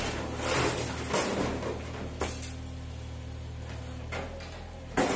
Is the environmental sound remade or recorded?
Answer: recorded